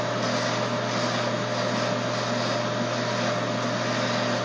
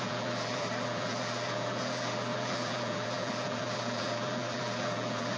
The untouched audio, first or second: first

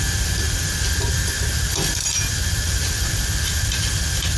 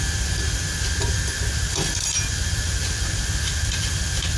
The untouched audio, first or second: second